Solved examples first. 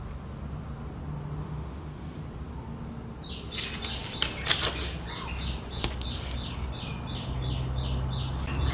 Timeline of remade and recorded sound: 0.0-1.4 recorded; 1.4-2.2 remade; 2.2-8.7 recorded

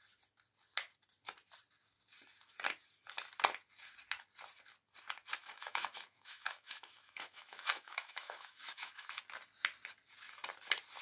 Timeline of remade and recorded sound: 0.0-5.4 recorded; 5.4-9.2 remade; 9.2-11.0 recorded

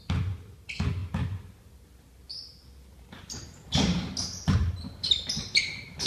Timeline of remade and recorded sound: 0.0-6.1 recorded